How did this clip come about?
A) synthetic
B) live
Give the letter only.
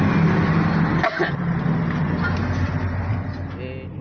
B